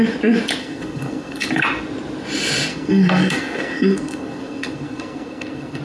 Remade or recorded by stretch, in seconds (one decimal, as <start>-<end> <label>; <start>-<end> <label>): 0.0-0.6 recorded; 0.6-1.5 remade; 1.5-2.7 recorded; 2.7-5.8 remade